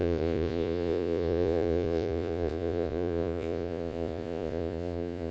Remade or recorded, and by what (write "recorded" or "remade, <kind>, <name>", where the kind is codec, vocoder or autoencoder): remade, vocoder, Vocos